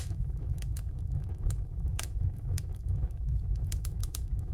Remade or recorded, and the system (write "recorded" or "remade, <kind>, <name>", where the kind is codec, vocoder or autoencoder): remade, autoencoder, DAC-VAE